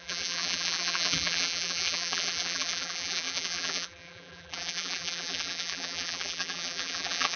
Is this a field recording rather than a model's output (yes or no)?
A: no